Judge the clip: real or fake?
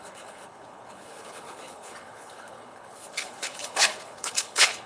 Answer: fake